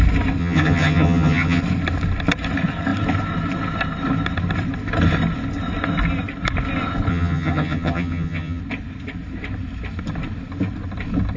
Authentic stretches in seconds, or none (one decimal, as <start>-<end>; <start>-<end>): 0.0-0.4; 1.6-7.1; 8.6-11.4